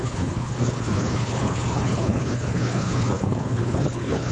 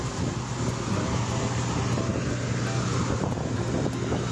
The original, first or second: second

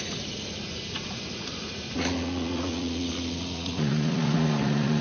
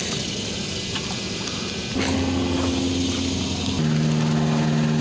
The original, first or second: second